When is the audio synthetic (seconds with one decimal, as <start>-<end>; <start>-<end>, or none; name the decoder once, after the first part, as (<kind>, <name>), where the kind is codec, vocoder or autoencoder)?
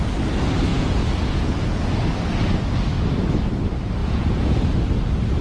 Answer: 0.7-1.8 (vocoder, Vocos); 4.0-4.6